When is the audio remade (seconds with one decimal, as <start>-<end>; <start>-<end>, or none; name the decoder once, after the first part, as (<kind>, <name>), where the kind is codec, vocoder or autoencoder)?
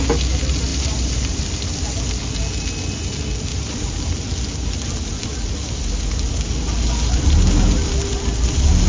0.7-1.4 (vocoder, BigVGAN v2); 3.5-4.1